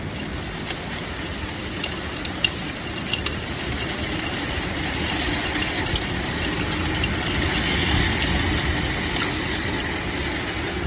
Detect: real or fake real